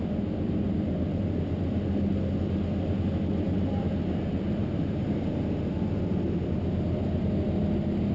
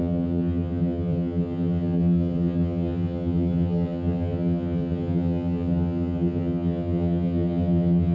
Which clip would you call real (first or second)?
first